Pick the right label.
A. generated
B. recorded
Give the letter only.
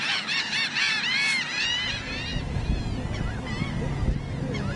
B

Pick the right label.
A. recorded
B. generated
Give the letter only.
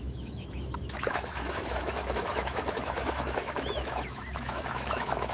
B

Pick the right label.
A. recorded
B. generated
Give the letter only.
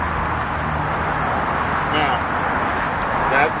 A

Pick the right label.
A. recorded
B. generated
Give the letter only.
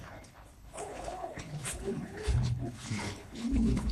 B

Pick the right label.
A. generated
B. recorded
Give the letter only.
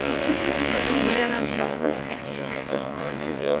A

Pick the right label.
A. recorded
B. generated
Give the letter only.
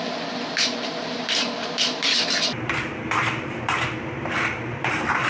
B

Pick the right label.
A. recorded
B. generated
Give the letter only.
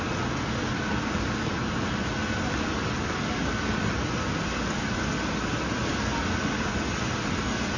A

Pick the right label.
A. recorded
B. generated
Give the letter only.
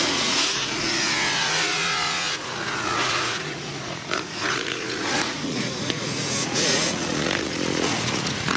B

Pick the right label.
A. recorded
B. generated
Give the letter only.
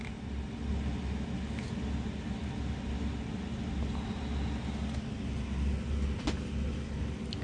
A